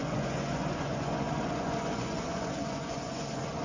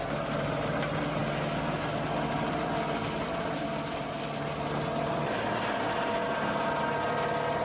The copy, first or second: first